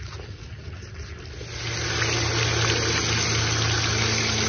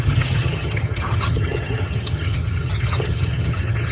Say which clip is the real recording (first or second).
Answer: first